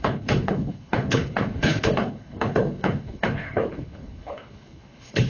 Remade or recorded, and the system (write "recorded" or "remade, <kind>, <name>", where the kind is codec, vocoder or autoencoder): remade, codec, HILCodec